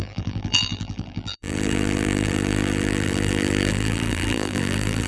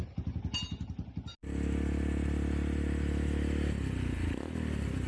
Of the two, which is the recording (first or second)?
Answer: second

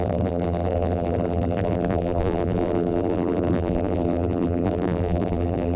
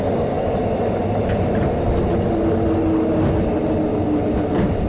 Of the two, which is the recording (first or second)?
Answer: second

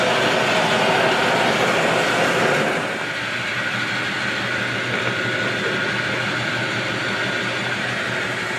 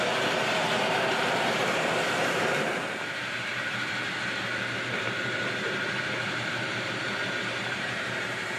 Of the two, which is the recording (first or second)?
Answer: first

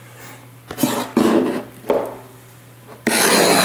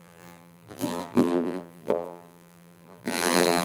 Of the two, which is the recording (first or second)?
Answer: first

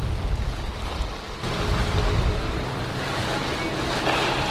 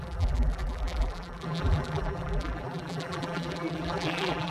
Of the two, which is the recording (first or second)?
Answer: first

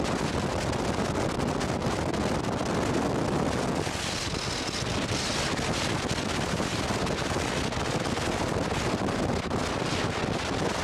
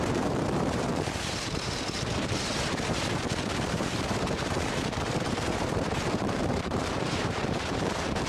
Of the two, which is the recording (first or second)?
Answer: first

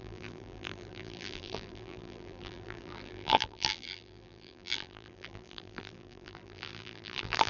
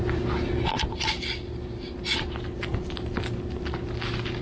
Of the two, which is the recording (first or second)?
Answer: second